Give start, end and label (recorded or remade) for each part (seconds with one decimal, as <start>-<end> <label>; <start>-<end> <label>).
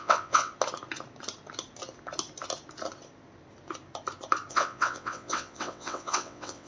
0.0-0.5 remade; 0.5-4.5 recorded; 4.5-6.7 remade